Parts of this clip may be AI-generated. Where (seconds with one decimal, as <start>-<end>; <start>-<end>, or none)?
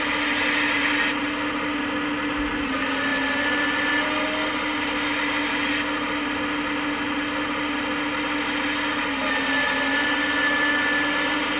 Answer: none